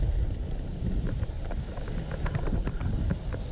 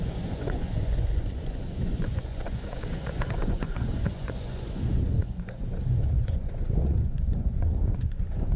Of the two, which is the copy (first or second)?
second